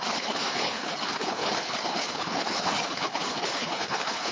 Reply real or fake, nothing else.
fake